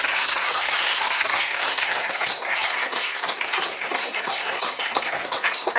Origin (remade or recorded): remade